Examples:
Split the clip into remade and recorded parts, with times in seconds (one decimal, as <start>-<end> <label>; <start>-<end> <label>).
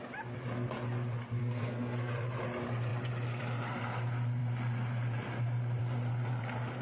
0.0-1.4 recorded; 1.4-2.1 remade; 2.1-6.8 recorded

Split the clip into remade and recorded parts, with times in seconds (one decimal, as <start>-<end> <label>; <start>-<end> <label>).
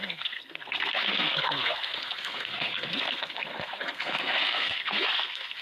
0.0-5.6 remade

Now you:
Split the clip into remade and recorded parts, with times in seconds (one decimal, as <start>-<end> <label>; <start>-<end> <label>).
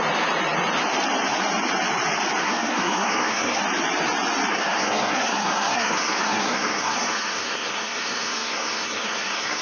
0.0-2.4 recorded; 2.4-3.6 remade; 3.6-4.5 recorded; 4.5-9.6 remade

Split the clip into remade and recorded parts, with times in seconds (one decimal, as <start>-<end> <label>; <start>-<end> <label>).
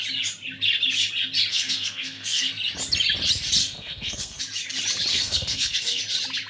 0.0-1.5 recorded; 1.5-2.5 remade; 2.5-3.6 recorded; 3.6-4.4 remade; 4.4-5.1 recorded; 5.1-6.0 remade; 6.0-6.5 recorded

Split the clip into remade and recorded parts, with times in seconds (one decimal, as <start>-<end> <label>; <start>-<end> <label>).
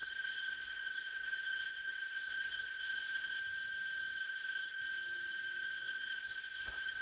0.0-3.4 remade; 3.4-4.2 recorded; 4.2-4.8 remade; 4.8-5.8 recorded; 5.8-7.0 remade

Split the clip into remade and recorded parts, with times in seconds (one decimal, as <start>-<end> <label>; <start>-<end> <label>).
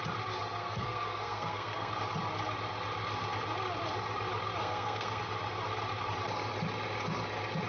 0.0-0.6 recorded; 0.6-1.9 remade; 1.9-4.6 recorded; 4.6-5.2 remade; 5.2-7.7 recorded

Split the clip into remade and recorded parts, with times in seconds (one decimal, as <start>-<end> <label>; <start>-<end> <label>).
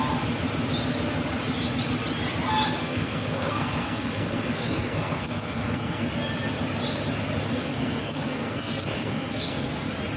0.0-2.8 recorded; 2.8-6.1 remade; 6.1-7.5 recorded; 7.5-9.7 remade; 9.7-10.2 recorded